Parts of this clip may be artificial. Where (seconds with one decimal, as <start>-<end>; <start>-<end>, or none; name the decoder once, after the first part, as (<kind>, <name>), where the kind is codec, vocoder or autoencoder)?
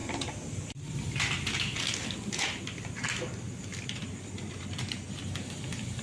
none